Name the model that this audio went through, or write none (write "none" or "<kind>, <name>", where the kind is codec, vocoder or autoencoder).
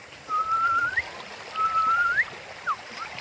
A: none